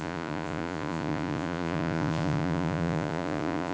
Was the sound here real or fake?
fake